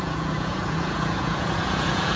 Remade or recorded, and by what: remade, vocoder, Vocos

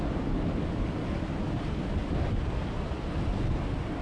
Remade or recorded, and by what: recorded